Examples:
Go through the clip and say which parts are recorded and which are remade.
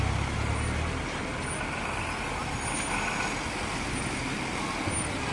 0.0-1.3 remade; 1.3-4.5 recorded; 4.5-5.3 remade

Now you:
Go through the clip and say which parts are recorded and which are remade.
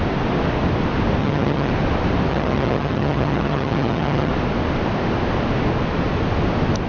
0.0-1.2 recorded; 1.2-1.7 remade; 1.7-2.3 recorded; 2.3-4.3 remade; 4.3-6.9 recorded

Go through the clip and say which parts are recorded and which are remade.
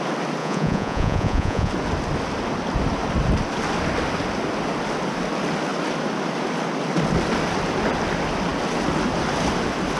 0.0-0.4 recorded; 0.4-1.7 remade; 1.7-10.0 recorded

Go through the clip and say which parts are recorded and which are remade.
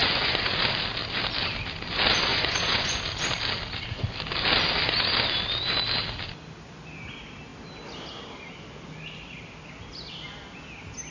0.0-0.6 remade; 0.6-2.3 recorded; 2.3-3.0 remade; 3.0-11.1 recorded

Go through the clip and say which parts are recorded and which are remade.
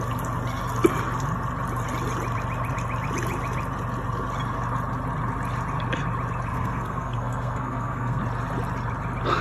0.0-6.5 recorded; 6.5-8.2 remade; 8.2-9.4 recorded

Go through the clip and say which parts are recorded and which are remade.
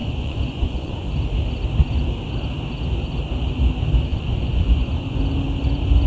0.0-1.1 remade; 1.1-4.1 recorded; 4.1-5.2 remade; 5.2-6.1 recorded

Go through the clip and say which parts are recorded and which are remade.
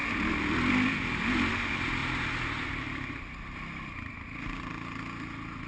0.0-1.4 remade; 1.4-2.0 recorded; 2.0-4.7 remade; 4.7-5.7 recorded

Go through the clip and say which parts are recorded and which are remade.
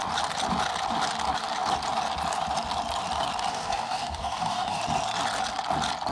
0.0-3.5 recorded; 3.5-4.8 remade; 4.8-6.1 recorded